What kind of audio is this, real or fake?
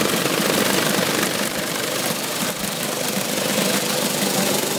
fake